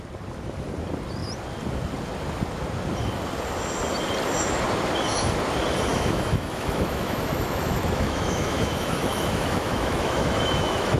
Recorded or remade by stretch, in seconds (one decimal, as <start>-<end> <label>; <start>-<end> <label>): 0.0-5.9 recorded; 5.9-11.0 remade